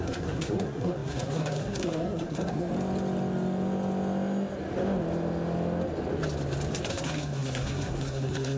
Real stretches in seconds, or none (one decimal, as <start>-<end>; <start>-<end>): 2.7-6.9

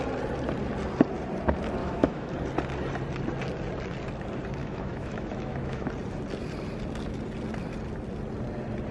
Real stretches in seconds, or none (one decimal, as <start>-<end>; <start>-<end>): 0.0-1.8; 2.3-4.6; 5.9-8.9

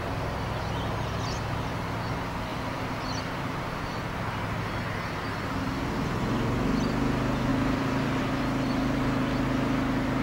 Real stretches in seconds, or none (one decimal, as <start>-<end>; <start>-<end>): 0.0-7.5; 8.2-10.2

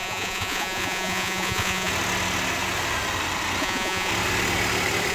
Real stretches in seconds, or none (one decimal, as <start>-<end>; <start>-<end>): 1.9-3.6; 4.1-5.1

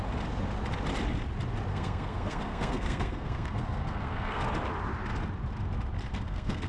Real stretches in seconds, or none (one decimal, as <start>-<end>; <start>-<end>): 0.0-1.7; 4.4-6.1

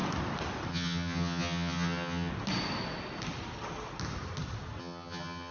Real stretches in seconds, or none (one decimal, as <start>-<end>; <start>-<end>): 0.0-0.7; 2.3-4.8